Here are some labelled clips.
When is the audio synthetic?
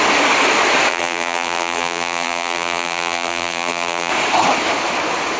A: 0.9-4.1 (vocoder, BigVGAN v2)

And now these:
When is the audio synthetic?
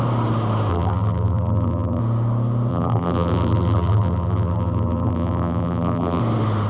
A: 0.7-2.0 (vocoder, BigVGAN v2); 2.7-6.2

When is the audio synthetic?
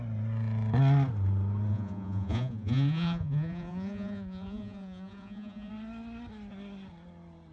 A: 1.7-5.7 (vocoder, Vocos)